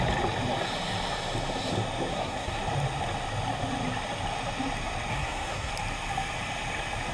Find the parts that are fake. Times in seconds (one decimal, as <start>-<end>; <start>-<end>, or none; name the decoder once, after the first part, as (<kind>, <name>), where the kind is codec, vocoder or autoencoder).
2.1-2.6 (codec, SNAC); 5.1-5.7